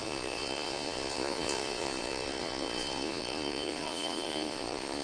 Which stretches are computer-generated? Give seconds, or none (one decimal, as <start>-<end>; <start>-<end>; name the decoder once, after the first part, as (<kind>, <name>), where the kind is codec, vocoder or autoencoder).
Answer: 0.0-5.0 (vocoder, Vocos)